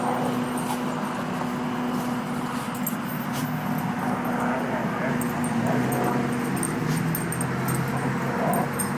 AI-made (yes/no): no